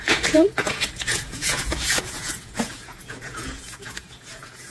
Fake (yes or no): yes